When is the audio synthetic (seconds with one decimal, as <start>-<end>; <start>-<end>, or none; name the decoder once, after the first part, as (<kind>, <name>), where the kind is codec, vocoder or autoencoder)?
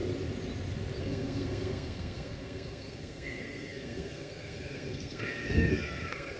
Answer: 1.0-6.4 (codec, SNAC)